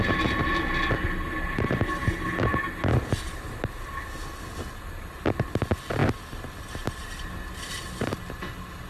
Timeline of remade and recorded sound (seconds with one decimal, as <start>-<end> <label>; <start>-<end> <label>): 0.0-8.9 recorded